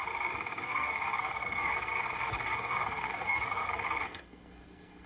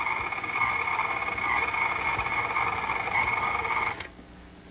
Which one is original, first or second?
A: second